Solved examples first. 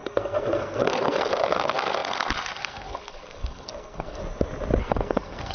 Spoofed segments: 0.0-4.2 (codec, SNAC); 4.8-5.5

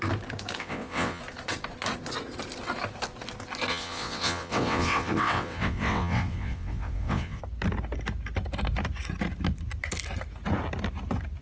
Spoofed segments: 0.6-1.2 (vocoder, WaveNeXt); 3.7-7.4

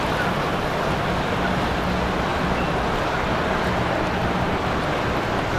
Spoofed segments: none

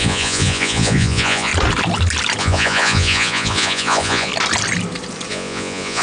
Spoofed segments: 0.0-1.5 (vocoder, Vocos); 2.4-4.3; 5.3-6.0

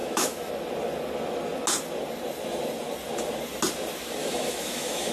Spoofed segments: 0.0-0.5 (autoencoder, DAC-VAE); 4.2-5.1

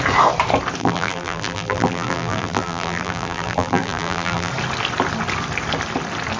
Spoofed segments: 0.8-4.5 (vocoder, BigVGAN v2)

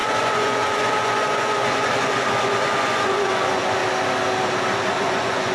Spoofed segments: 0.0-3.8 (vocoder, Vocos); 5.0-5.5

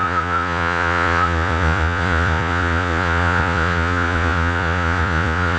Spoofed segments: 0.0-5.6 (vocoder, Vocos)